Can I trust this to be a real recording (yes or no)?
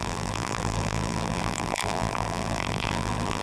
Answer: no